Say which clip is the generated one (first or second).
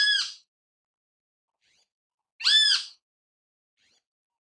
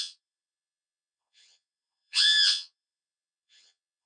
second